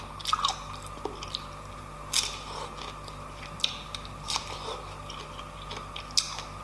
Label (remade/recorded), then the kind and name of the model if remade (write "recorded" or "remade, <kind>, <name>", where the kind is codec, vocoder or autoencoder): recorded